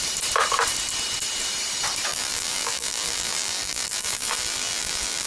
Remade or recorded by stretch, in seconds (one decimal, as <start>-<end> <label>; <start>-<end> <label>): 0.0-2.1 recorded; 2.1-5.3 remade